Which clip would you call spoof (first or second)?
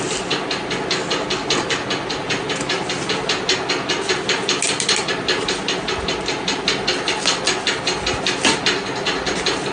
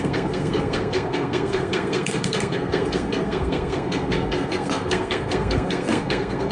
second